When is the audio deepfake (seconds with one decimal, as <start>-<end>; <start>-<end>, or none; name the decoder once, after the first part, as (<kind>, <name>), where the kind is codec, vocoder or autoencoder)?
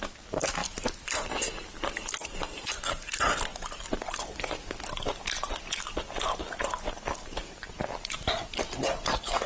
2.2-3.1 (vocoder, BigVGAN v2)